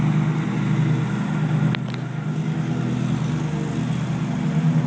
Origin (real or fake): real